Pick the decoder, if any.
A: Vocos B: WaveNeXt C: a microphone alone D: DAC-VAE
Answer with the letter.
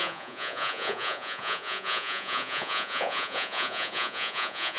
A